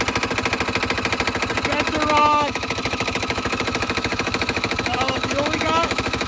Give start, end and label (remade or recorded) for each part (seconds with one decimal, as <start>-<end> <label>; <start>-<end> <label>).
0.0-2.2 recorded; 2.2-6.3 remade